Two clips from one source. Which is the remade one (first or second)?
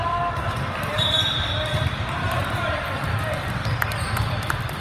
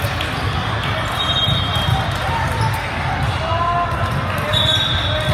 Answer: first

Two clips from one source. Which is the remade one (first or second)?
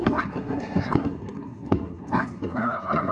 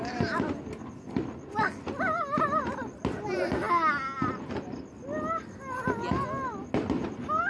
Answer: first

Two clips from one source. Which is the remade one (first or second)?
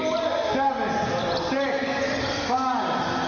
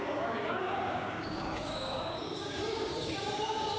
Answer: second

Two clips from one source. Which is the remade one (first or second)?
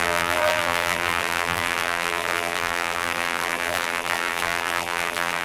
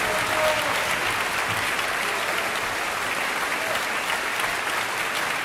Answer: first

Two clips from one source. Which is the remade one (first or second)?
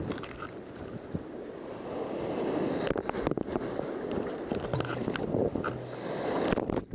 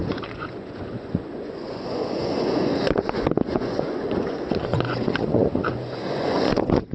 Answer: second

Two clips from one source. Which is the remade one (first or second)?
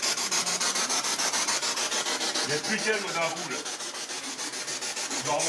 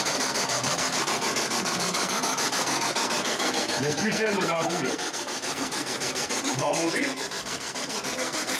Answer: second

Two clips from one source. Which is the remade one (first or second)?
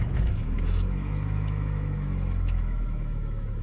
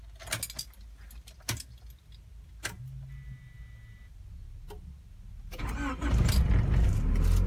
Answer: first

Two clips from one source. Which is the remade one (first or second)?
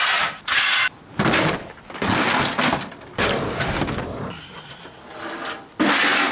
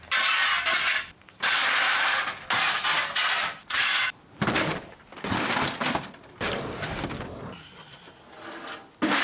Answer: second